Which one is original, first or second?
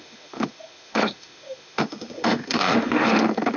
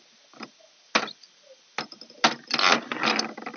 second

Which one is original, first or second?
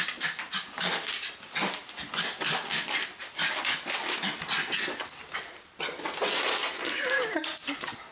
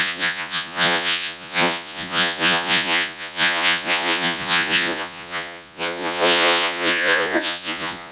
first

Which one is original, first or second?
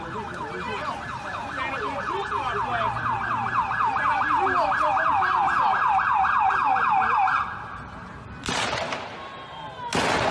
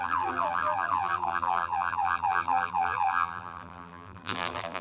first